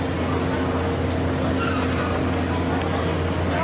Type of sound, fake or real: real